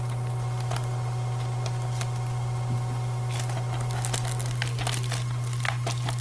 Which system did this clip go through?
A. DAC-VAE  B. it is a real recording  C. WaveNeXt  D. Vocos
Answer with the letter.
B